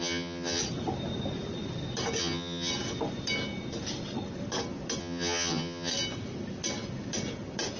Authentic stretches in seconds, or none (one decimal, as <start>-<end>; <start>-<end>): 0.6-2.2; 2.7-5.0; 5.9-7.8